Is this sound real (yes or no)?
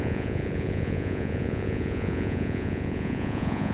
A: no